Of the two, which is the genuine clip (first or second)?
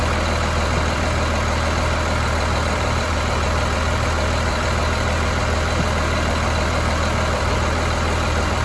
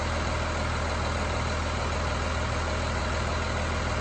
second